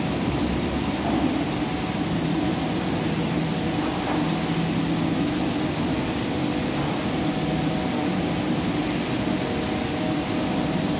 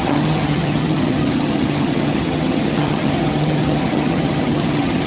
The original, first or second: first